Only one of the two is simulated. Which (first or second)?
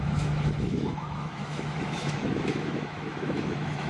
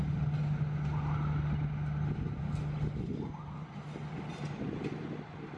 first